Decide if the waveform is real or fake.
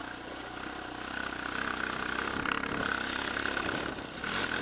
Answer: real